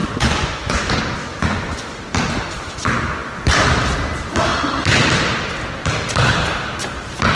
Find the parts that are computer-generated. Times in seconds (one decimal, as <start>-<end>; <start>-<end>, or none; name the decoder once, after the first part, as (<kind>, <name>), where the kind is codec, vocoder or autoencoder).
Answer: 0.0-0.9 (vocoder, Vocos); 1.3-2.0